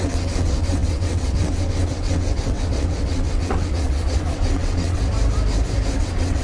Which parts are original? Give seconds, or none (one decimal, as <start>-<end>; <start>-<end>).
5.0-6.0

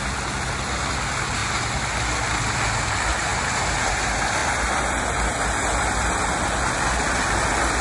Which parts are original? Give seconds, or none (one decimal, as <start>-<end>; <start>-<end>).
0.0-7.8

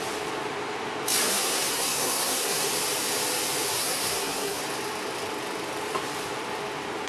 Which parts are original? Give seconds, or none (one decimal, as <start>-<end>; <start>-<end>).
0.0-1.3; 2.7-3.7; 4.6-7.1

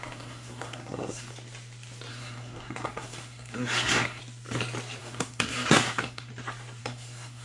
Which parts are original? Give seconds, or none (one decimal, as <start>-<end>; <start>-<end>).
1.3-2.1; 4.2-5.0; 6.3-6.8

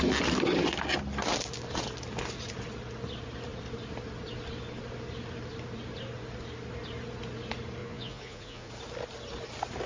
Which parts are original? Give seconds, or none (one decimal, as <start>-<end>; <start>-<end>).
0.0-7.8; 8.7-9.9

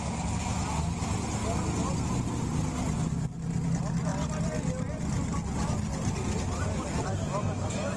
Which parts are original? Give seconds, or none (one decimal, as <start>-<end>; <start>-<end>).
0.0-8.0

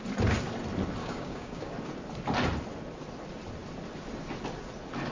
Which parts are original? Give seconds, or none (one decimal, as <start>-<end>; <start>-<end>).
0.0-1.0; 1.7-5.1

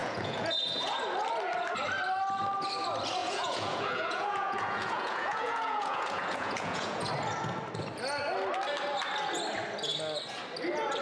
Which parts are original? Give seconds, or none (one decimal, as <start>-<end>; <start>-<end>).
1.0-3.2; 7.1-11.0